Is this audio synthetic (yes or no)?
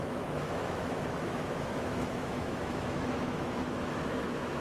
yes